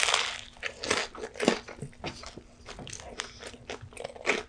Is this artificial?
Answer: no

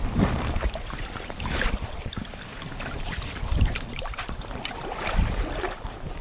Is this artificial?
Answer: yes